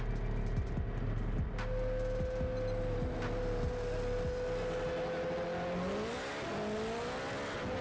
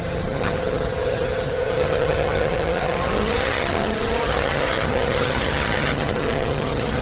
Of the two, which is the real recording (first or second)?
first